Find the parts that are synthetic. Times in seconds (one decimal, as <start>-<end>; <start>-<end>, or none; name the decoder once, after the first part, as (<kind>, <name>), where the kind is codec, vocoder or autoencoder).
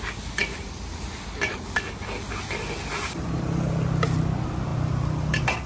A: none